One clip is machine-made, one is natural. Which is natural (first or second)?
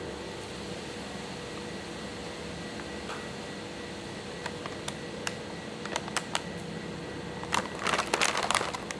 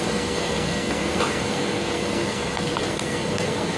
first